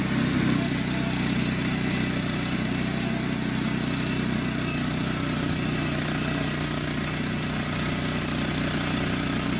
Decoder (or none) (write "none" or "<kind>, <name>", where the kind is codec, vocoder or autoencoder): none